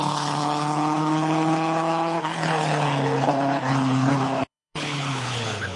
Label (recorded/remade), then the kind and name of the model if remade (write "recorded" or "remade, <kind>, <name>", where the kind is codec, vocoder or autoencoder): remade, codec, HILCodec